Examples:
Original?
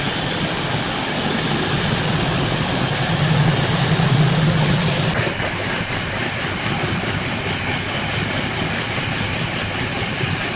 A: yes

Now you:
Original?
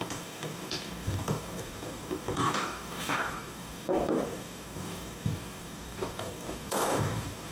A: no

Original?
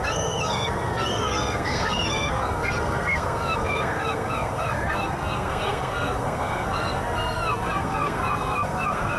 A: no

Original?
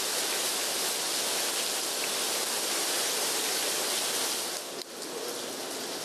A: yes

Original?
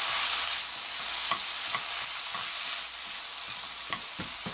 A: no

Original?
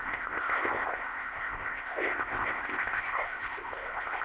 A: no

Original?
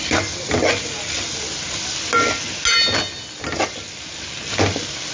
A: yes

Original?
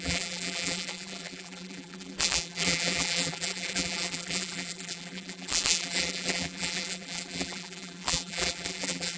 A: no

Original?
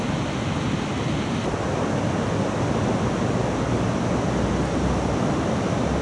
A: yes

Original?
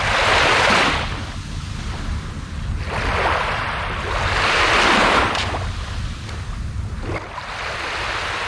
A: yes